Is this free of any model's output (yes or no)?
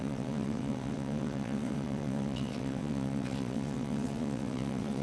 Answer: no